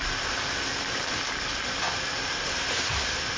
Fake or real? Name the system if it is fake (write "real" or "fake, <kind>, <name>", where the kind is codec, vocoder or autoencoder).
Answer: real